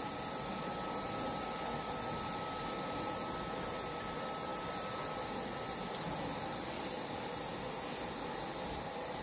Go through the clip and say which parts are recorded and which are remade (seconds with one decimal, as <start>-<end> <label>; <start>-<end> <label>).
0.0-9.2 recorded